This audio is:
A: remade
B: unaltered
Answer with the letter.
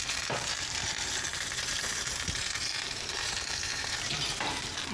A